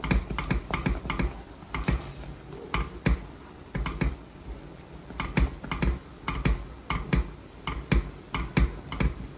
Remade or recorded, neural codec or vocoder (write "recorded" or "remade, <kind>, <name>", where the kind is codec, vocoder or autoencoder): recorded